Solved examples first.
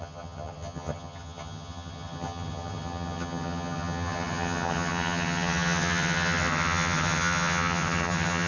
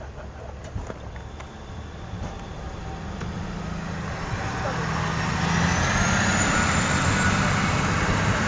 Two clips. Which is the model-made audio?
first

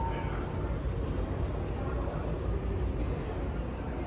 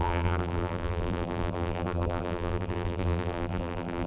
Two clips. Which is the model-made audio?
second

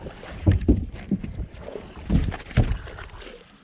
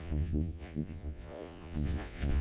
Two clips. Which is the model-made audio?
second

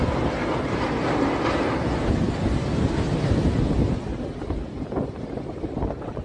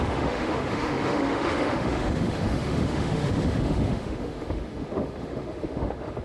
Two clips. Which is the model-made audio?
second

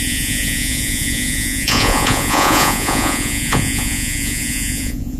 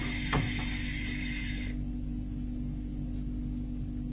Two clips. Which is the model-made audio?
first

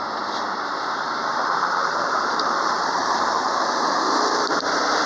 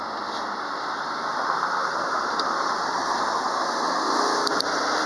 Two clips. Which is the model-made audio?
first